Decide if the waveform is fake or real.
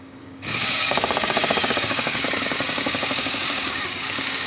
fake